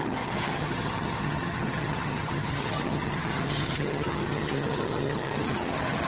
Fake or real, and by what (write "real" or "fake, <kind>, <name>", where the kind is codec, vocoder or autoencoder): fake, vocoder, HiFi-GAN